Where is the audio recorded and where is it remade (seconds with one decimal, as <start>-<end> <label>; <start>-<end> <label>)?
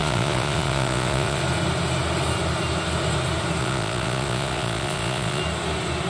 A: 0.0-1.4 remade; 1.4-3.6 recorded; 3.6-5.4 remade; 5.4-6.1 recorded